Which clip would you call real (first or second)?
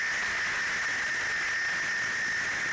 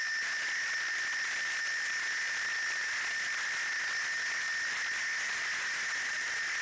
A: first